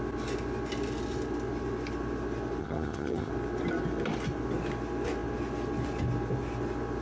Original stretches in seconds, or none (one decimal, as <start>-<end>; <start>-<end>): 0.0-2.6; 3.3-7.0